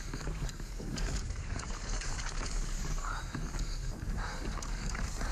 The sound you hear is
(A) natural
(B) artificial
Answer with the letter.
B